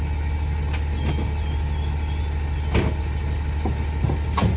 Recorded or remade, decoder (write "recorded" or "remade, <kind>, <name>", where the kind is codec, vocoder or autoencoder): recorded